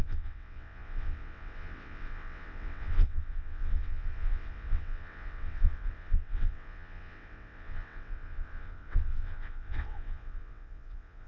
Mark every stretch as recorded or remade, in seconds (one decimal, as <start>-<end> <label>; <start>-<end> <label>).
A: 0.0-11.3 remade